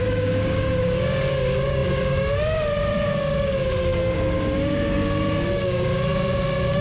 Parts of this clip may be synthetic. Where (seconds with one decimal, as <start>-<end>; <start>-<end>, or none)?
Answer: 0.0-6.8